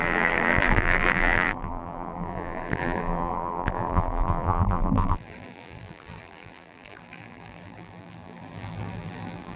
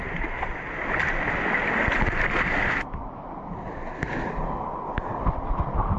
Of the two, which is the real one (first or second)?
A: second